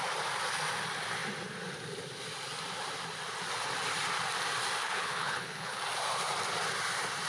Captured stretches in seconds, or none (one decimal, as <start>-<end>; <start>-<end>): 0.0-4.8; 5.8-7.3